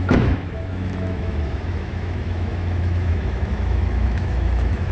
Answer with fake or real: fake